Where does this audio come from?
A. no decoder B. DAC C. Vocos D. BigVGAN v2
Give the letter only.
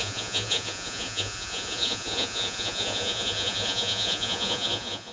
C